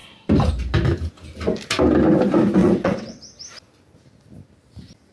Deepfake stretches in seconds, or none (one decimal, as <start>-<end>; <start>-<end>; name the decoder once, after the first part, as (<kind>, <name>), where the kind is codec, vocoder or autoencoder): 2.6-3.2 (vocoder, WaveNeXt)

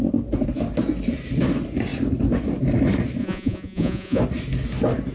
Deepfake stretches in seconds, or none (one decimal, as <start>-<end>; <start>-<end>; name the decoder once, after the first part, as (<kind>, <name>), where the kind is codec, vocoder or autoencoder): 3.2-4.2 (vocoder, Vocos)

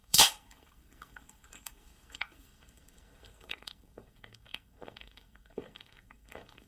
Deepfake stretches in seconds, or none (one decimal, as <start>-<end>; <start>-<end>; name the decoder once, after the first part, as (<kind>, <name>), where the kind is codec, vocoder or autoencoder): 0.0-6.7 (codec, SNAC)

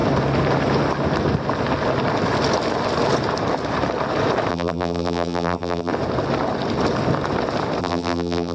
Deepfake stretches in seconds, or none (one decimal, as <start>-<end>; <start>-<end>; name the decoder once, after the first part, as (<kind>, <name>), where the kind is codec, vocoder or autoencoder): 4.5-5.9 (vocoder, BigVGAN v2); 7.8-8.5

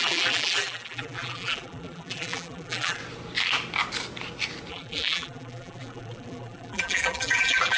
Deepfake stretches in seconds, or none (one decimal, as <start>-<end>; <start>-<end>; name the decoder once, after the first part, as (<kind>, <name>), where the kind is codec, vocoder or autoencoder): 0.0-3.0 (vocoder, BigVGAN v2); 4.7-7.8

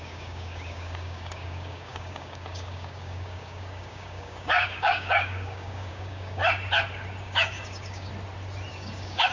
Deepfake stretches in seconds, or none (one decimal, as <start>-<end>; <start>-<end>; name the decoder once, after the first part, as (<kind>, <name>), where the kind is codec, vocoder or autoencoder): 0.0-6.4 (codec, DAC); 7.2-8.1; 8.7-9.3